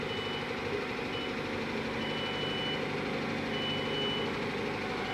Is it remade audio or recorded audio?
recorded